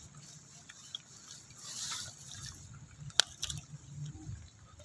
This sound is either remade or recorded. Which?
recorded